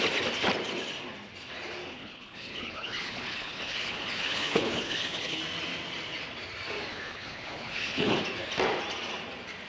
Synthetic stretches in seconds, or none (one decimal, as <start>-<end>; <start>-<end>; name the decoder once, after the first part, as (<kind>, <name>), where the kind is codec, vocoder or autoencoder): 1.9-5.4 (codec, HILCodec); 6.9-8.2